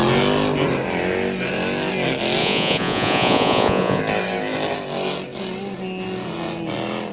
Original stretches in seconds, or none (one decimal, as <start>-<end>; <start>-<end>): 0.0-2.4; 4.0-7.1